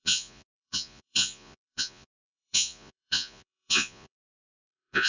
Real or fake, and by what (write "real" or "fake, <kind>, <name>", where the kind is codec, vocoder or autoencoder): fake, vocoder, Vocos